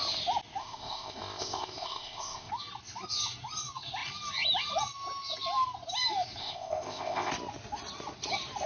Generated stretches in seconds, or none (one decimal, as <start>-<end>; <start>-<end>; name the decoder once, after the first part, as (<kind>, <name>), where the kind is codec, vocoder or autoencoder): 0.6-2.5 (codec, ZipCodec); 6.4-7.3